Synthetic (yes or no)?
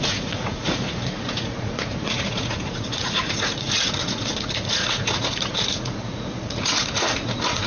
yes